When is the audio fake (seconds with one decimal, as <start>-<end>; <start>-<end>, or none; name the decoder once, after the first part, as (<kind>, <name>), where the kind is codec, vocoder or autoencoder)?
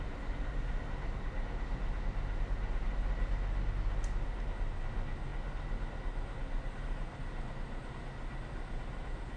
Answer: none